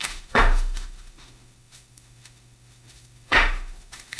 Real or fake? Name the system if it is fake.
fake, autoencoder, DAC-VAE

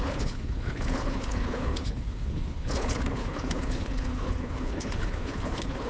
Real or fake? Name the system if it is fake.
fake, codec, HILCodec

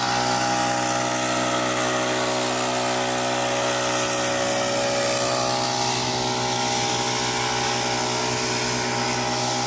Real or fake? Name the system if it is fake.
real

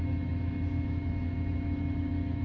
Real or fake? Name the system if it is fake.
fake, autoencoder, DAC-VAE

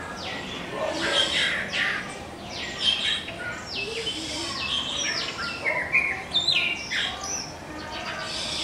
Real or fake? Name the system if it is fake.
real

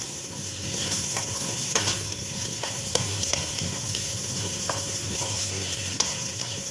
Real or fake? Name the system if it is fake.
fake, codec, SNAC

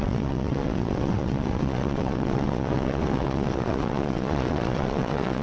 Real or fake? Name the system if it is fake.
fake, vocoder, WaveNeXt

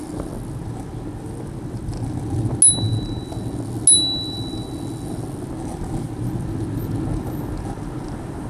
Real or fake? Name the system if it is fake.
real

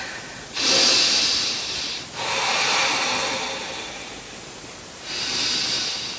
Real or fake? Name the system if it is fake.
real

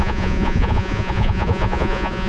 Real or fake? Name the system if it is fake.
fake, vocoder, Vocos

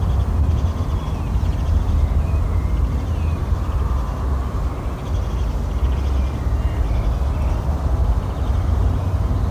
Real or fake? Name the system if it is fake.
real